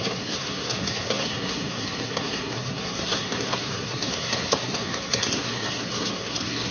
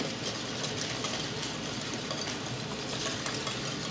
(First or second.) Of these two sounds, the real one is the second